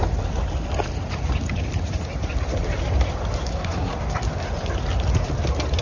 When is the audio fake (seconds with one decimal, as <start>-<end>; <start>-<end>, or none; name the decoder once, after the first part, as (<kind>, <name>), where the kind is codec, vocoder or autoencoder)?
3.5-3.9 (codec, SNAC)